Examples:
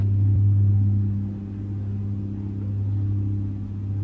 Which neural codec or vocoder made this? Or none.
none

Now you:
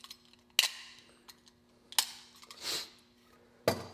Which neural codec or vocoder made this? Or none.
none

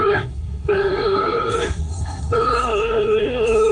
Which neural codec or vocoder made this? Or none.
codec, SNAC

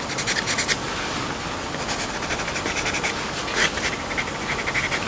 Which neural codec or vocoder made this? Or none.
none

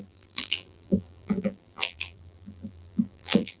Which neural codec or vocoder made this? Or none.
vocoder, BigVGAN v2